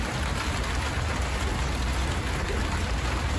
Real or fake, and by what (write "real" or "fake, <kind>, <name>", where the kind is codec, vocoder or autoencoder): real